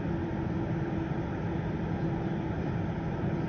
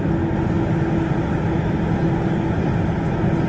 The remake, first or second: first